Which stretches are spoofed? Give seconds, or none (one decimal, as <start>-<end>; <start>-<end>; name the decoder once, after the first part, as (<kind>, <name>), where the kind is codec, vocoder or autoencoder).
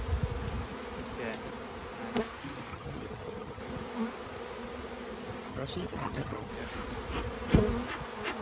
2.7-3.6 (vocoder, HiFi-GAN); 5.5-6.5